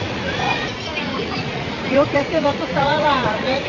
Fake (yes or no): yes